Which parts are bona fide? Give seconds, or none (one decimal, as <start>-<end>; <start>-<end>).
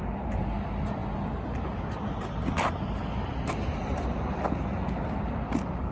0.0-5.9